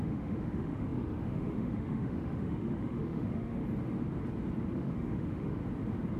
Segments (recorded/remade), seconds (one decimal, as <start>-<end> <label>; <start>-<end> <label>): 0.0-3.6 remade; 3.6-4.7 recorded; 4.7-5.6 remade; 5.6-6.2 recorded